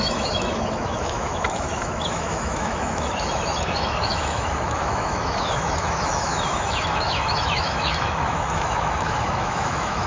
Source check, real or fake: fake